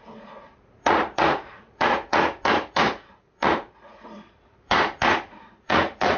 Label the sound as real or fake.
fake